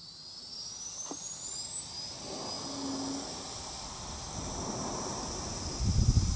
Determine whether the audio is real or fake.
real